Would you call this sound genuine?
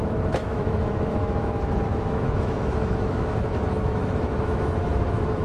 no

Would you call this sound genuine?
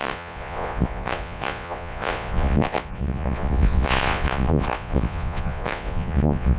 no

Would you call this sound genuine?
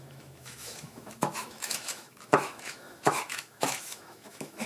no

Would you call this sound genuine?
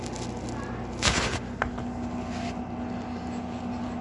yes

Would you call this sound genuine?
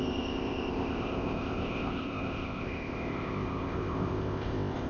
no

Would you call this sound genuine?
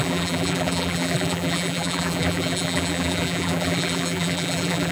no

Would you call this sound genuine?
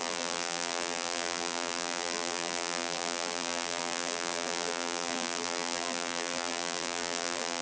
no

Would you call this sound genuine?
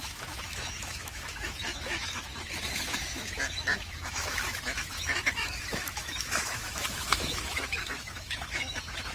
no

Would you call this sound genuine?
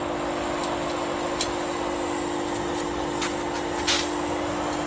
yes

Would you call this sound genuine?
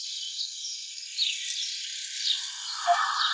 yes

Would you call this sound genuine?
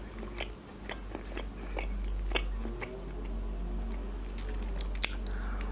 yes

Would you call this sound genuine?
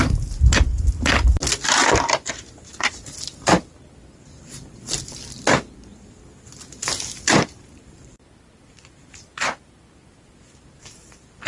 no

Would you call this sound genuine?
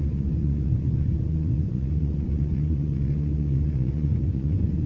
no